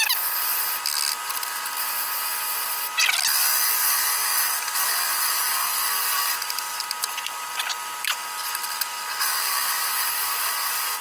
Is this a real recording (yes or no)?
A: yes